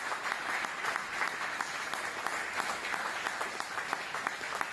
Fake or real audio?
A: real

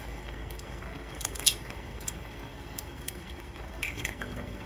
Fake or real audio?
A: fake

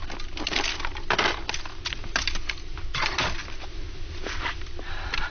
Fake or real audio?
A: real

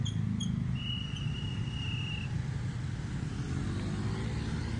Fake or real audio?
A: real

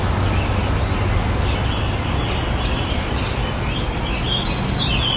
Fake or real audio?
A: real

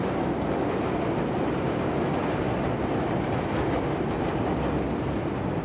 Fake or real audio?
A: real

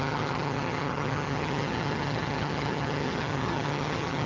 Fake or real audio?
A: fake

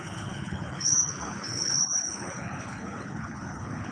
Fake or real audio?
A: fake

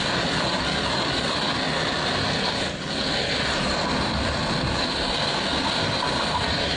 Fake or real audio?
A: fake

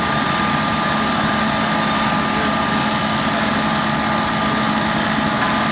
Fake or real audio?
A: real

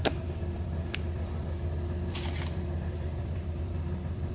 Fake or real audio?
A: fake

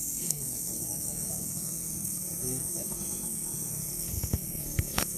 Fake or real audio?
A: fake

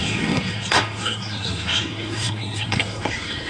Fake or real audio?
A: fake